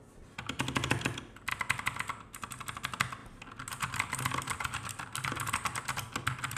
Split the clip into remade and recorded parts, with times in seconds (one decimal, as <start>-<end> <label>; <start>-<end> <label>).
0.0-6.6 recorded